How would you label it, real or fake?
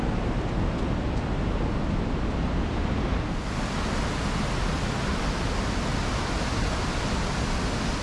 real